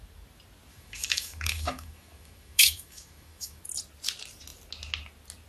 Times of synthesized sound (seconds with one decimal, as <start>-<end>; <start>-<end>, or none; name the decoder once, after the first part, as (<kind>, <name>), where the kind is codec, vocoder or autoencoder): 0.7-3.6 (autoencoder, DAC-VAE)